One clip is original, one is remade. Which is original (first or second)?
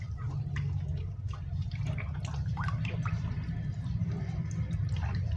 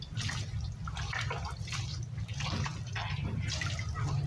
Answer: second